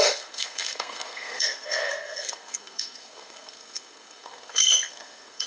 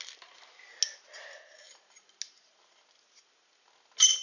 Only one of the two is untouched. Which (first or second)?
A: second